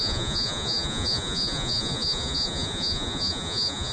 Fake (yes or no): yes